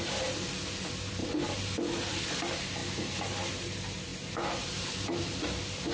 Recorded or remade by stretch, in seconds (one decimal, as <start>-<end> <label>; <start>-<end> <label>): 0.0-5.9 recorded